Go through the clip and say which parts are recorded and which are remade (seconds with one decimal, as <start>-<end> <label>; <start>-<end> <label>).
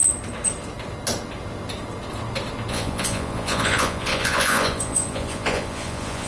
0.0-2.7 recorded; 2.7-6.3 remade